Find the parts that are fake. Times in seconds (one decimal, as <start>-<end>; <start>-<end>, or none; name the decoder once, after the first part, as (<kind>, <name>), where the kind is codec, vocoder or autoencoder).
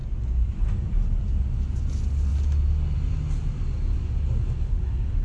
none